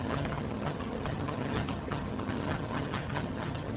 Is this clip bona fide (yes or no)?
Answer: no